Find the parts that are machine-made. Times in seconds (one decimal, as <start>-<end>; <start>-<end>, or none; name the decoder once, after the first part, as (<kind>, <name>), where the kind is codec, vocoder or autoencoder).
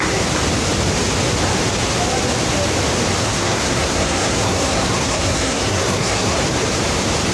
3.2-6.4 (codec, SNAC)